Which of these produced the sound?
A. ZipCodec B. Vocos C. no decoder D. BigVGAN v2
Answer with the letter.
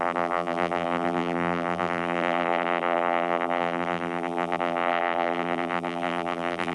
D